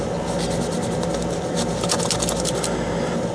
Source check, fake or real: real